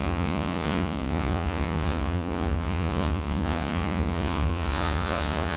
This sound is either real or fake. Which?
fake